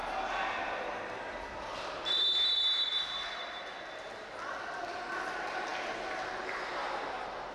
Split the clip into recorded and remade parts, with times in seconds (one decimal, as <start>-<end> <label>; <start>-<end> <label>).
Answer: 0.0-7.5 recorded